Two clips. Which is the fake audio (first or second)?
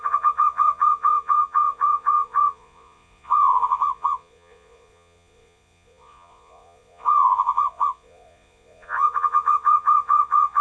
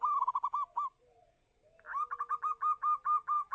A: first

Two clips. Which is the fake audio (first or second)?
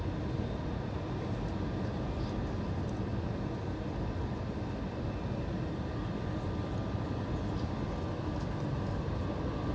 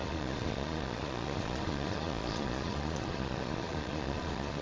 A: second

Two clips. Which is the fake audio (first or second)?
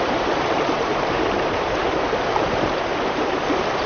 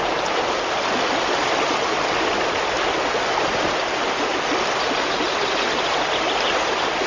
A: first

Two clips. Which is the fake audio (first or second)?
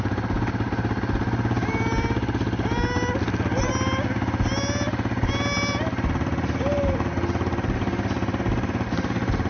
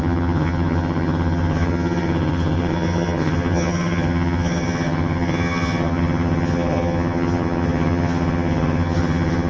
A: second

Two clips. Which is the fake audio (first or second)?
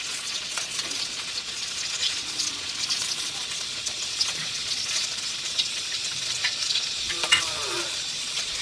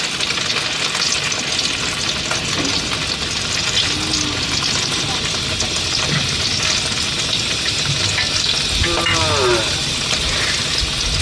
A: first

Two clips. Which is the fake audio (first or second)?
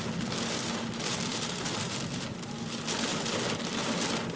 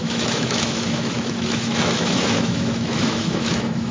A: second